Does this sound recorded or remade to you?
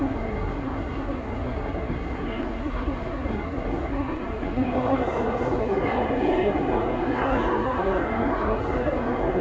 remade